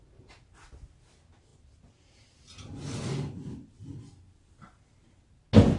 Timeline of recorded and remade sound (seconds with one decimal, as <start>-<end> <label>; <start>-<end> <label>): 0.0-1.5 recorded; 1.5-3.8 remade; 3.8-5.8 recorded